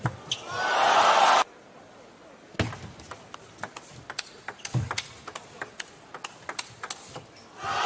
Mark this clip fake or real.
real